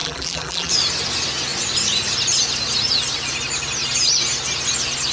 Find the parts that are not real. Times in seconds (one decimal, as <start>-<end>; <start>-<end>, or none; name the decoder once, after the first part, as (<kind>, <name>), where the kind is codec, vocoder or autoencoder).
0.0-0.7 (vocoder, BigVGAN v2)